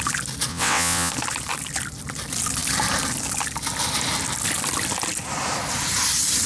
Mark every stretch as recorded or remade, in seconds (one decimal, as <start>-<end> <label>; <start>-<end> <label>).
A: 0.0-0.5 recorded; 0.5-1.1 remade; 1.1-6.5 recorded